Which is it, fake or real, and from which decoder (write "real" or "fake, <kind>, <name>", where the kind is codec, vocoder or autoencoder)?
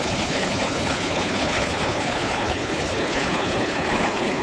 fake, codec, HILCodec